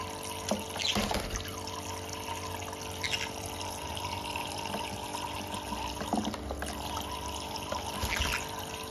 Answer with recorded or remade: recorded